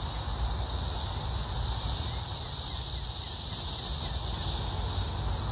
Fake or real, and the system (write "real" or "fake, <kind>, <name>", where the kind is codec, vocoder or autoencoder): real